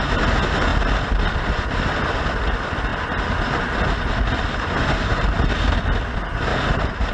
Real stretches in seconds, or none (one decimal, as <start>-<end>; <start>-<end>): 0.0-5.1; 5.6-6.5